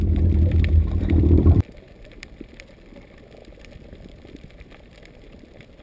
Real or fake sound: fake